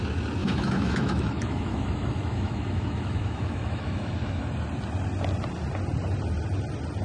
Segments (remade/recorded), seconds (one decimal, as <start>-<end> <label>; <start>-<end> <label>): 0.0-0.4 recorded; 0.4-4.4 remade; 4.4-7.0 recorded

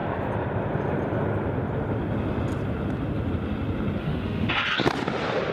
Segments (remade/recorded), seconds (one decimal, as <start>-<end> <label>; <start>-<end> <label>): 0.0-4.0 recorded; 4.0-4.5 remade; 4.5-5.5 recorded

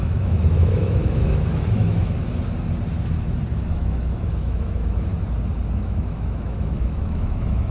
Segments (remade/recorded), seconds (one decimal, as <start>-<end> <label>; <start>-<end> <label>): 0.0-2.2 remade; 2.2-3.5 recorded; 3.5-5.1 remade; 5.1-5.8 recorded; 5.8-7.7 remade

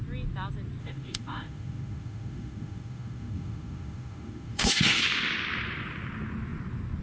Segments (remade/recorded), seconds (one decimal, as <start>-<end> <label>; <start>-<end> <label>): 0.0-0.8 recorded; 0.8-5.0 remade; 5.0-7.0 recorded